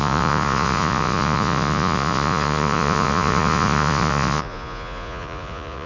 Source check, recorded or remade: remade